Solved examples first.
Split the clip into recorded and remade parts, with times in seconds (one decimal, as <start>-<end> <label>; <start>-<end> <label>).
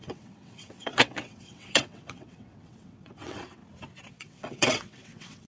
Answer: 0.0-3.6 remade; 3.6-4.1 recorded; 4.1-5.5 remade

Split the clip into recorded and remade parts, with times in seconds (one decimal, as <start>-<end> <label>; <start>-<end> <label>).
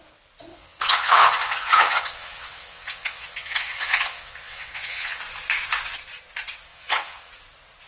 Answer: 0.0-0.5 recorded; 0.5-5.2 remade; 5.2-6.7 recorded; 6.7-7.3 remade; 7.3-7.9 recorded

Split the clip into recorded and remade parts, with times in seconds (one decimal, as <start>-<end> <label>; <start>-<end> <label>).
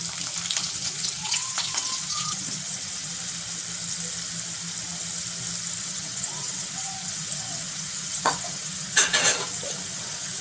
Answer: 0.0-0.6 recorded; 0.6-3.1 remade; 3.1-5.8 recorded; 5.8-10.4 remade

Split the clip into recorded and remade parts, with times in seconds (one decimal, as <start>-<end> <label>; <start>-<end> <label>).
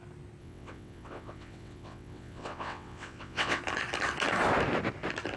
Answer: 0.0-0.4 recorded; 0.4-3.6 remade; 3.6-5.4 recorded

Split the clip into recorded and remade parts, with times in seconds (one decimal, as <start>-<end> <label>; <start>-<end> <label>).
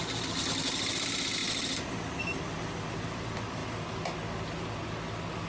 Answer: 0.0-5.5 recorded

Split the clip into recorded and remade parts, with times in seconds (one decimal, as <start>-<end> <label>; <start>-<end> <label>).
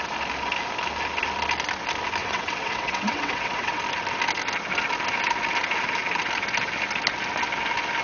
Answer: 0.0-2.2 recorded; 2.2-3.8 remade; 3.8-8.0 recorded